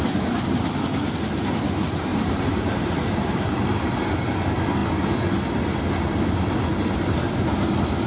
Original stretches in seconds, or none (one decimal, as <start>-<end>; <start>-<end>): 0.0-2.1; 3.6-8.1